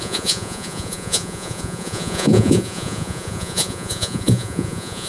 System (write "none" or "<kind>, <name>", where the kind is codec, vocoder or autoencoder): vocoder, Vocos